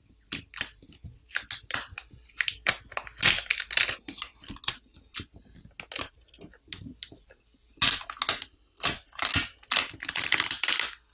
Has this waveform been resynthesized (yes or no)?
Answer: no